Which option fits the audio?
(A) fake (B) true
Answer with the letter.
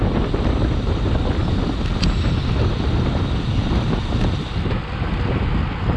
B